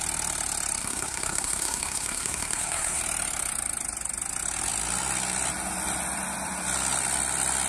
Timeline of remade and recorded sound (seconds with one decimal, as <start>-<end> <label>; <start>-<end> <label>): 0.0-0.8 recorded; 0.8-3.0 remade; 3.0-7.7 recorded